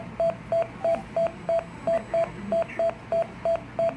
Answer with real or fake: real